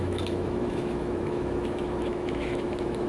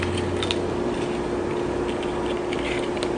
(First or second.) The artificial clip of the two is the first